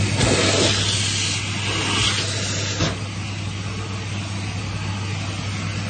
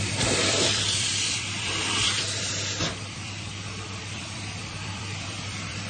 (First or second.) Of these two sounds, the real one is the first